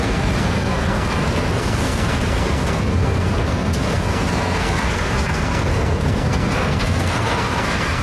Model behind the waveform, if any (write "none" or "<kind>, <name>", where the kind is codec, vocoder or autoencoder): codec, SNAC